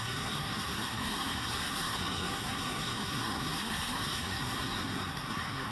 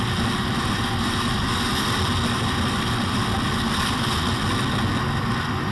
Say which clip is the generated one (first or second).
first